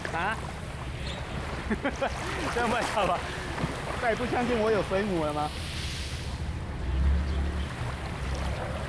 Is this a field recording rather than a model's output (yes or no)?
yes